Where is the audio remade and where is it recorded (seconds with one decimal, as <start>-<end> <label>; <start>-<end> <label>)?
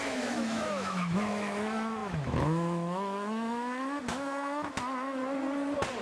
0.0-5.2 remade; 5.2-6.0 recorded